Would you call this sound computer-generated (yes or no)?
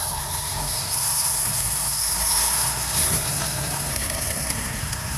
yes